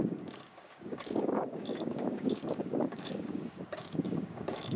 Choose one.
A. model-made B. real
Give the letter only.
A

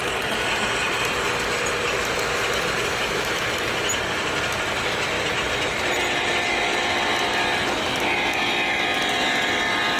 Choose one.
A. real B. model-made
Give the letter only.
A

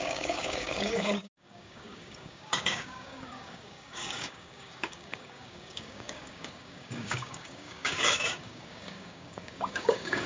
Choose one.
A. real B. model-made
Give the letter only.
B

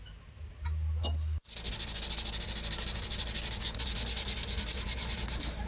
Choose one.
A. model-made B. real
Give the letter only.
B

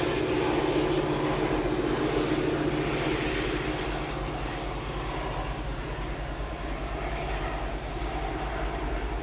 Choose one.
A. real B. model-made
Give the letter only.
A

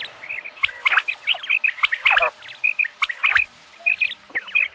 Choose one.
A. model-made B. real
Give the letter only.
B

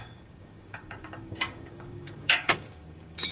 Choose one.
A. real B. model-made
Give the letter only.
B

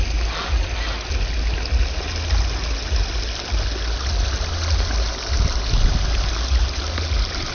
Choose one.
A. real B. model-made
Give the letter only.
A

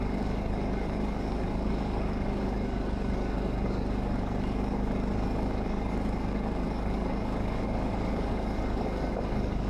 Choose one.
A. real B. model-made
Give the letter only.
B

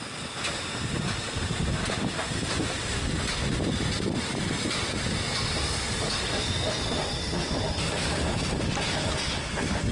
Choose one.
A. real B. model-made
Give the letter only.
A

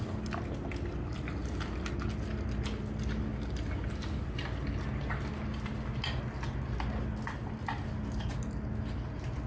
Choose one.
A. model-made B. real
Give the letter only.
B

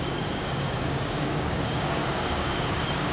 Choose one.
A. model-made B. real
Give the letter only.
A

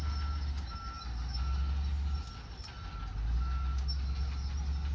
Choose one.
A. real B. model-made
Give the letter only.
A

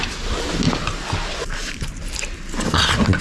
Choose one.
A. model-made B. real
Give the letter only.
B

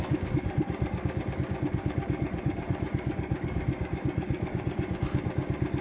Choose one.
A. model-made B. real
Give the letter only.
A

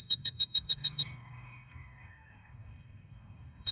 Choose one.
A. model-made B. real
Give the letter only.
A